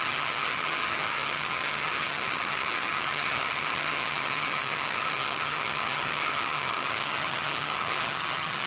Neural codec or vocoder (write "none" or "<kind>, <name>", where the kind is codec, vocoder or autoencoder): vocoder, HiFi-GAN